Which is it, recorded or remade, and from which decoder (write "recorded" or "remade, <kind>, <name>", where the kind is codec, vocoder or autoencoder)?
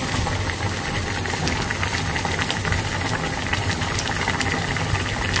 recorded